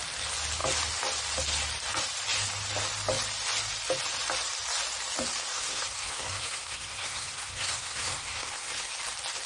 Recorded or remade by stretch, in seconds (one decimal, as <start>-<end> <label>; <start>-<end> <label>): 0.0-5.5 recorded; 5.5-8.9 remade; 8.9-9.5 recorded